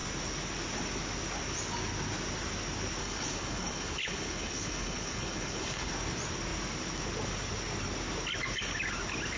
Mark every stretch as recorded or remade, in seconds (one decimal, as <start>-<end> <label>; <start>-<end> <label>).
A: 0.0-3.0 recorded; 3.0-5.9 remade; 5.9-9.4 recorded

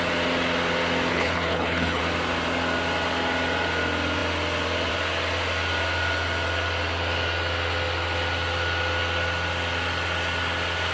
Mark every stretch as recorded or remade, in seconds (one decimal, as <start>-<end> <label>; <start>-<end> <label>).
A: 0.0-1.1 recorded; 1.1-2.0 remade; 2.0-10.9 recorded